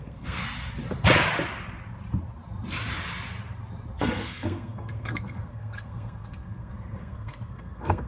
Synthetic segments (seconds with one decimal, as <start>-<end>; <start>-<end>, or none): 0.0-0.4; 4.0-8.1